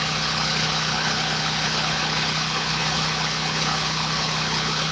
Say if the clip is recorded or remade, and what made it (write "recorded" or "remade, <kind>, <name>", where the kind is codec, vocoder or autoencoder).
remade, codec, HILCodec